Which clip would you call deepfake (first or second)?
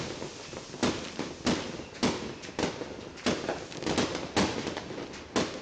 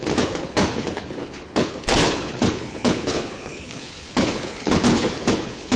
second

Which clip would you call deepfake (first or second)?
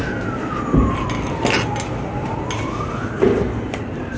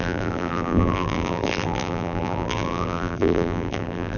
second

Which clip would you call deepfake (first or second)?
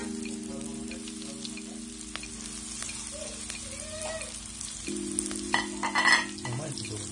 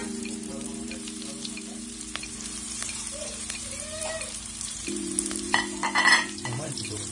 second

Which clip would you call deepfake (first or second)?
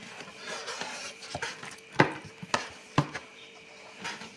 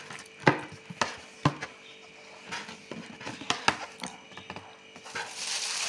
first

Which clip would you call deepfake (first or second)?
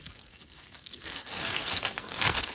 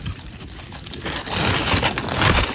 first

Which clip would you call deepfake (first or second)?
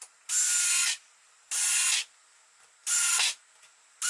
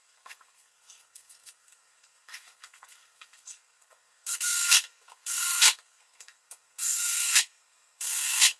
second